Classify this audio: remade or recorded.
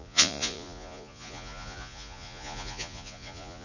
remade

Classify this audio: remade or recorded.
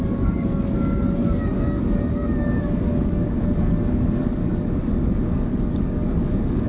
remade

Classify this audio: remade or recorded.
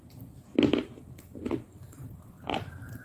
remade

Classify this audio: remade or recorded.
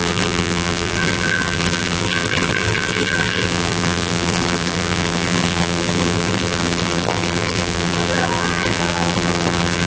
remade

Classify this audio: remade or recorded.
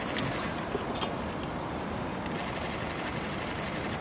recorded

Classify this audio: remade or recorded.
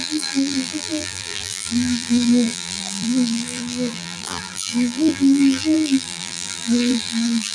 remade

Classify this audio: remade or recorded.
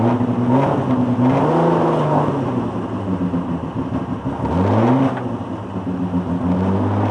recorded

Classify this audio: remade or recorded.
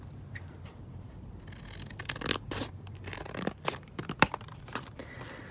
remade